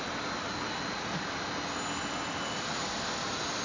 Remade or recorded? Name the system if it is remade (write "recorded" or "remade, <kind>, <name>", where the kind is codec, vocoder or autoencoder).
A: recorded